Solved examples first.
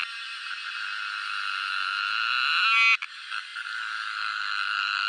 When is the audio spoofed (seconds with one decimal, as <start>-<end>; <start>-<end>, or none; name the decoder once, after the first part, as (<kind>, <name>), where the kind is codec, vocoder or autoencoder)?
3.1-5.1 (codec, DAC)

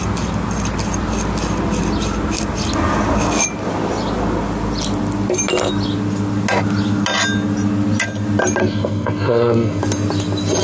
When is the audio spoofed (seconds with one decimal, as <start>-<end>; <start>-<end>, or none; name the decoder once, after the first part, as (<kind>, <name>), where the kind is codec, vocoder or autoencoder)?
8.6-9.8 (codec, SNAC)

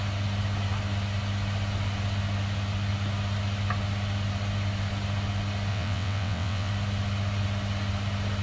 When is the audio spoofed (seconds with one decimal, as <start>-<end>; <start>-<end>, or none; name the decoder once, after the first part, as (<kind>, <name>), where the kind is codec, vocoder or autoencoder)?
5.7-6.7 (vocoder, WaveNeXt)

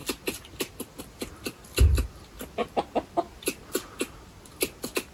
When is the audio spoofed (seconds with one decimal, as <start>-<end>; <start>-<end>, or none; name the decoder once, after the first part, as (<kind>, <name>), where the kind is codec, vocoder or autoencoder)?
none

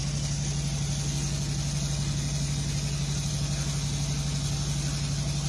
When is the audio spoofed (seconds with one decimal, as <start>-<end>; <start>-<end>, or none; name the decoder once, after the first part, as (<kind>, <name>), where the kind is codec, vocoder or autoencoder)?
none